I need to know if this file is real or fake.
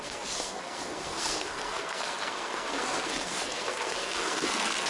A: fake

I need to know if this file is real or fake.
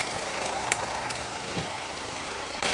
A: fake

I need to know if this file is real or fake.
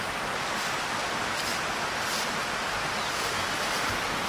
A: real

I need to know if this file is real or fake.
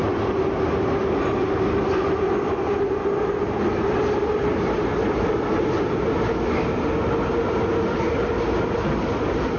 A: real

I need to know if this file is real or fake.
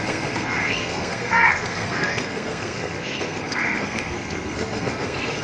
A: fake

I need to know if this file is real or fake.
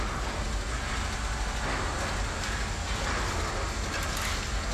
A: real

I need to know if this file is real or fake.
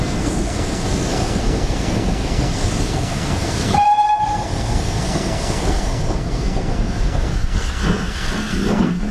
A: fake